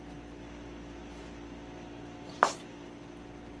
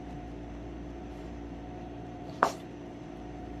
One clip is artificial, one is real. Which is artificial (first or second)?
second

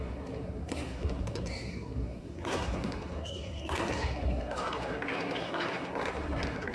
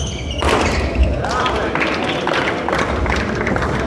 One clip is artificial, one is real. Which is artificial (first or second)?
first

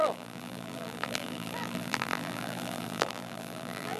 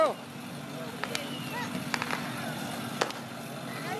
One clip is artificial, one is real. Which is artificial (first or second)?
first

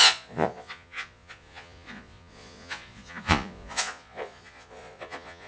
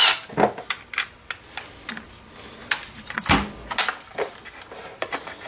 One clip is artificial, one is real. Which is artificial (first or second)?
first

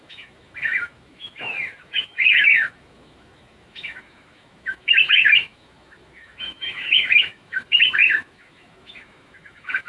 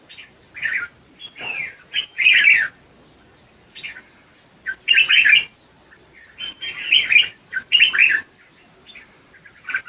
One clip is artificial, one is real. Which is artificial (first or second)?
first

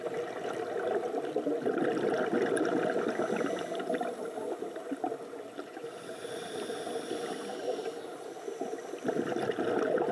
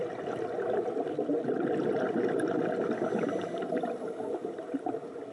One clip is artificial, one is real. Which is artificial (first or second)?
second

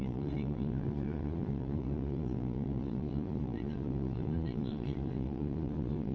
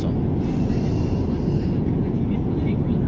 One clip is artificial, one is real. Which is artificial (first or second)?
first